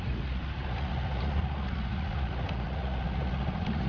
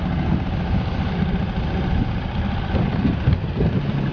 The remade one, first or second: first